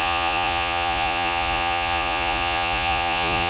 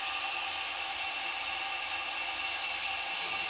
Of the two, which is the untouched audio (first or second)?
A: second